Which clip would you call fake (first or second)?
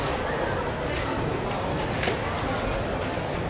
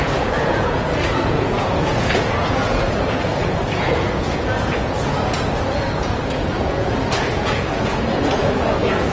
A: second